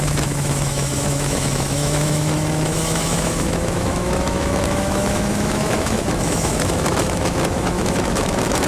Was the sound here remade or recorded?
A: remade